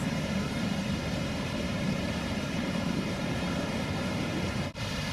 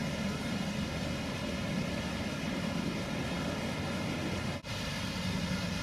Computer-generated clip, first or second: first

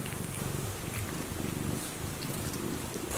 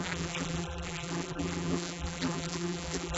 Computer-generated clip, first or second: second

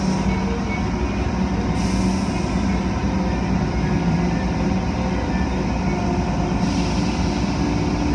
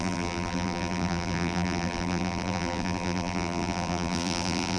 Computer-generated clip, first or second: second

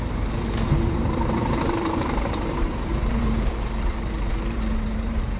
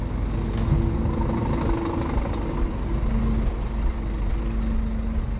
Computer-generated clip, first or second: first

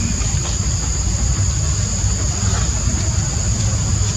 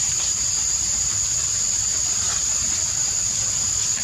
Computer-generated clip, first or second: second